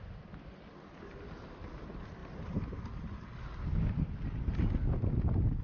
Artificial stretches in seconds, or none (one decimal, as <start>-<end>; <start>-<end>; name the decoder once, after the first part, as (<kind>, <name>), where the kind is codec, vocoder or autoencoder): none